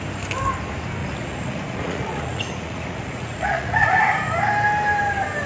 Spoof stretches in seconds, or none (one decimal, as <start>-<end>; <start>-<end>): 1.0-4.0

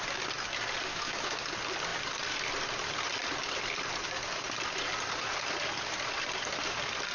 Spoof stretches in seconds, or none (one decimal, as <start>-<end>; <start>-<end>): 0.9-1.5

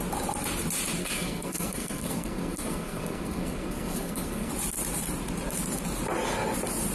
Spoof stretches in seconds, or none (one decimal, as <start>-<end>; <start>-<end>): 1.0-4.5

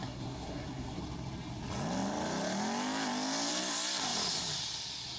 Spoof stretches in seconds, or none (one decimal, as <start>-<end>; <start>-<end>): 0.0-1.0

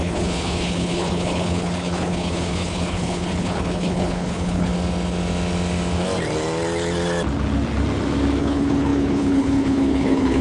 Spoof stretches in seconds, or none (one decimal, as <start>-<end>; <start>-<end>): 0.0-4.7; 8.4-10.4

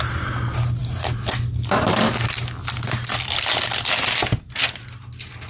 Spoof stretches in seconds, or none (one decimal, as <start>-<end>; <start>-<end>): none

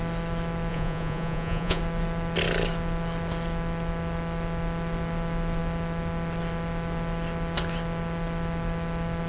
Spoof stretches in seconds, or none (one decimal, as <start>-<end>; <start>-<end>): 0.7-1.8